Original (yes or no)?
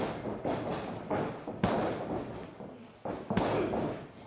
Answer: yes